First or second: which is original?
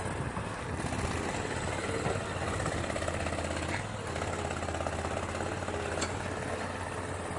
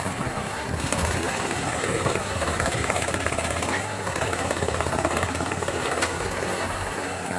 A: first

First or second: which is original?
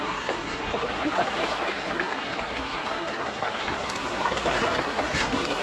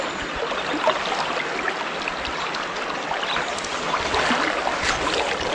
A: second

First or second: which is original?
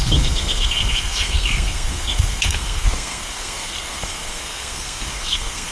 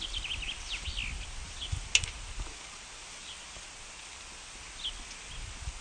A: second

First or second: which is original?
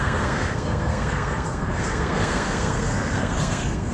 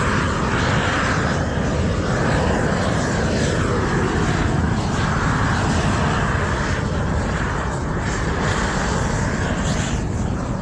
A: second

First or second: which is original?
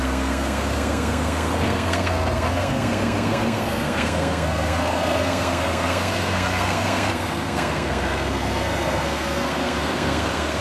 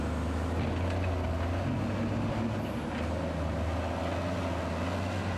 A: second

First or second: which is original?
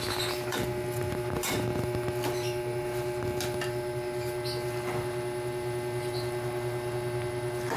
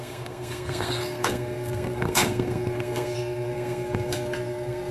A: first